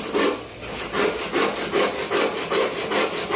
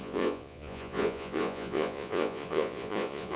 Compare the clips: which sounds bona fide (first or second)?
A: first